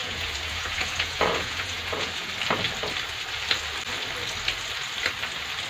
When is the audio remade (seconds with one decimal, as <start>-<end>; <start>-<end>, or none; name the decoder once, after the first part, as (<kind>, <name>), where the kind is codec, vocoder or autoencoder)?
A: 0.0-2.3 (vocoder, Vocos)